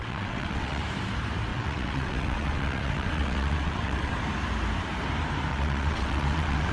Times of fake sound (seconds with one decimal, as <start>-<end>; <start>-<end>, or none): 0.0-0.8; 1.5-4.1; 5.5-6.7

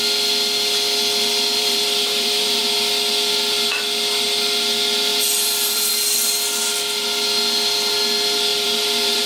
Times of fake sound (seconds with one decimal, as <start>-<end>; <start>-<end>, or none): 1.6-2.6; 5.1-5.9; 8.5-9.3

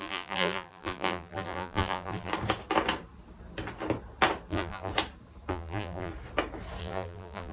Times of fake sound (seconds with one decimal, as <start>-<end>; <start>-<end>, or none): 0.0-2.3; 4.5-4.9; 5.5-6.1; 6.8-7.5

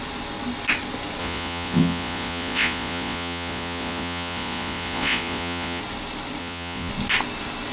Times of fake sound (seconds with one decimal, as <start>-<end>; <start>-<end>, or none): 1.2-5.8; 6.4-6.9